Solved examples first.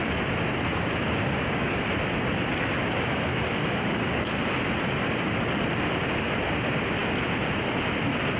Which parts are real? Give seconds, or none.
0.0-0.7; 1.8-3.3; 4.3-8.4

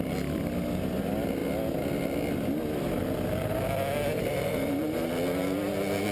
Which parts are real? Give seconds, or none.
0.0-4.1; 5.1-6.1

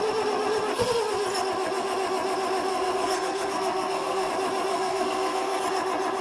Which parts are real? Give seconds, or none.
0.0-2.7; 4.3-4.7; 5.6-6.2

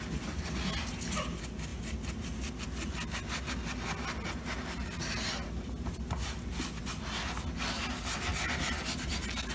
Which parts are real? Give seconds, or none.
0.0-9.5

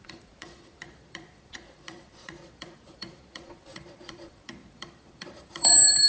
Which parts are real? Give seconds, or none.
none

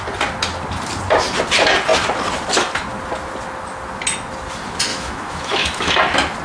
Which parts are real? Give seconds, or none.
0.0-4.9; 5.9-6.4

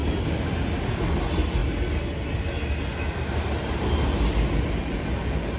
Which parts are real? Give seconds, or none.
0.0-5.6

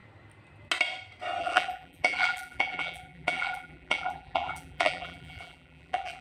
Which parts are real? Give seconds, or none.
0.0-1.4